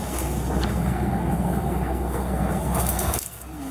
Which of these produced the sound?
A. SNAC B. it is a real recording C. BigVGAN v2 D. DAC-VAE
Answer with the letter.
A